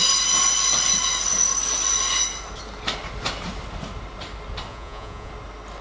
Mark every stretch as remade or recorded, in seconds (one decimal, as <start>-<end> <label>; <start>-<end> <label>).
0.0-4.7 recorded; 4.7-5.3 remade; 5.3-5.8 recorded